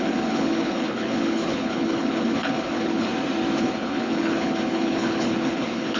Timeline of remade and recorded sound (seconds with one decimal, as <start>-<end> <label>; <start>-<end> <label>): 0.0-3.1 remade; 3.1-3.6 recorded; 3.6-6.0 remade